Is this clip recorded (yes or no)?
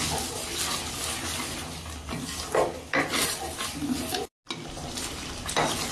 yes